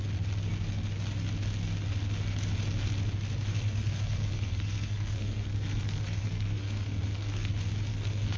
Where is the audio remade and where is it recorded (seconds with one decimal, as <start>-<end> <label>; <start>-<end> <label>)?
0.0-3.5 recorded; 3.5-7.5 remade; 7.5-7.9 recorded; 7.9-8.4 remade